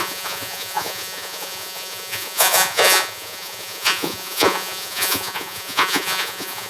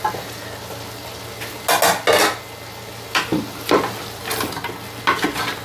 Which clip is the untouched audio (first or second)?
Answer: second